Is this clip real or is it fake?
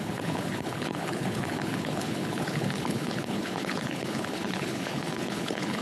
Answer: fake